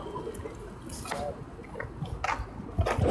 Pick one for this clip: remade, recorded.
recorded